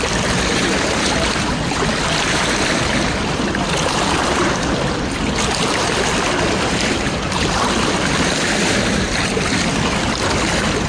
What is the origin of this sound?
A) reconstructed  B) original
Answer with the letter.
A